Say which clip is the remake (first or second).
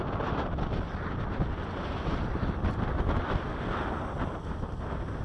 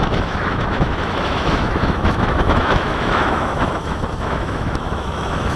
second